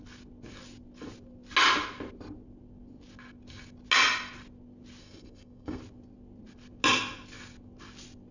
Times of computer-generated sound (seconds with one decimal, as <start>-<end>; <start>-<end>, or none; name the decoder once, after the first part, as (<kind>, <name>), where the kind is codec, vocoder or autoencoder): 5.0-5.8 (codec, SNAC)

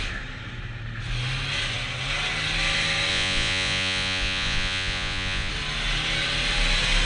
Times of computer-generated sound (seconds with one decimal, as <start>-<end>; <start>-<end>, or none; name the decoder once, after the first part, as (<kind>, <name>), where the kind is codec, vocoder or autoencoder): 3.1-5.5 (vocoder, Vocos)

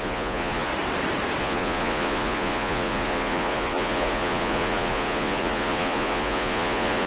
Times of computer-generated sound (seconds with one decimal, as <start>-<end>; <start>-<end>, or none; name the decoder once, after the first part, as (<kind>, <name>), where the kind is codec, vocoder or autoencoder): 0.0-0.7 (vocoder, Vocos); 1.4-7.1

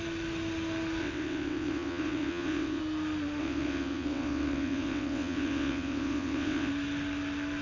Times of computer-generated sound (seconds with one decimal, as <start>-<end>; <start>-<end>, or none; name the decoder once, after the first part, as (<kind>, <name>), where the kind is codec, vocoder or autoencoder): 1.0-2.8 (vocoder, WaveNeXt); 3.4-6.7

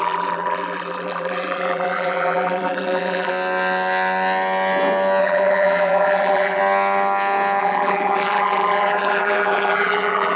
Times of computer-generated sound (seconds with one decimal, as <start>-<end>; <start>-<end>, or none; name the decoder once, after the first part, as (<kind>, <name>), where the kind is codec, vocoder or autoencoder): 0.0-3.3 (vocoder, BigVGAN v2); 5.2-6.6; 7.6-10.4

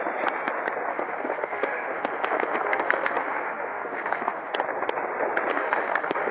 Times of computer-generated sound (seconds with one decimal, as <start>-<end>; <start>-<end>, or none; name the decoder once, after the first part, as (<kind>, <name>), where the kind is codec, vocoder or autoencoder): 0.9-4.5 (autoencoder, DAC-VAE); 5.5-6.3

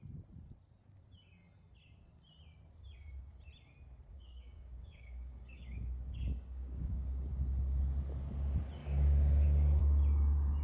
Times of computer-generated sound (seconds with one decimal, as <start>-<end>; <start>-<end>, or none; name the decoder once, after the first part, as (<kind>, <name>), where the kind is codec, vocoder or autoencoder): 4.1-7.3 (codec, DAC); 8.8-9.8